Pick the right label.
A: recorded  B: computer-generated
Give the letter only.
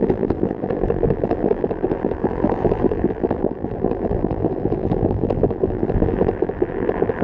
B